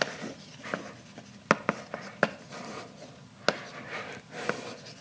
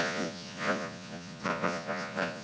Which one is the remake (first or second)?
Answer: second